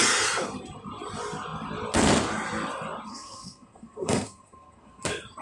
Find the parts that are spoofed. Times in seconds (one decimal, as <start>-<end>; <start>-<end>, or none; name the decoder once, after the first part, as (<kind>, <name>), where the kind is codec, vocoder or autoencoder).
3.1-5.0 (codec, SNAC)